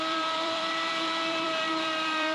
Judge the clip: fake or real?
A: fake